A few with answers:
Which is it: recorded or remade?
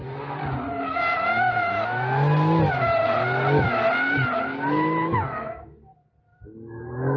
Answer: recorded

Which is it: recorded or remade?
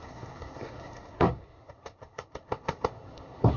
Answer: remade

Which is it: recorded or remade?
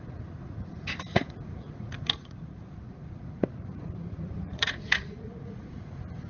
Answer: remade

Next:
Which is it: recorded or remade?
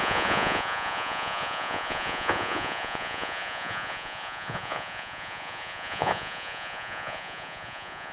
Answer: remade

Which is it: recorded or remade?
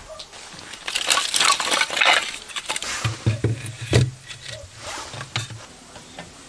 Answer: recorded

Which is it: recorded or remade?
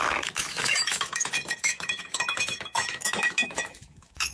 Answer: remade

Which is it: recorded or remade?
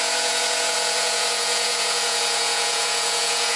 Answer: remade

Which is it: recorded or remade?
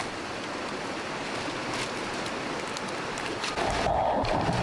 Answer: recorded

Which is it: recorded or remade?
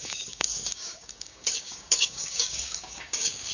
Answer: remade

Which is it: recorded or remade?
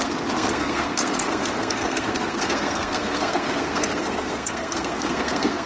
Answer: remade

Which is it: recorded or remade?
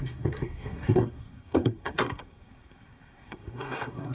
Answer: remade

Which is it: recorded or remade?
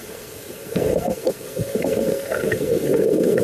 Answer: remade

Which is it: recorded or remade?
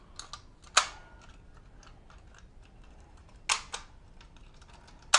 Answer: recorded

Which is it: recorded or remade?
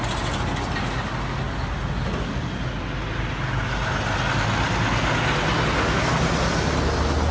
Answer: recorded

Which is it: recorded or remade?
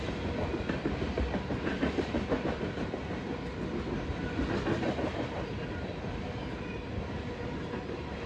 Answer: recorded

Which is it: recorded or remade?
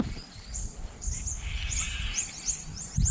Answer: recorded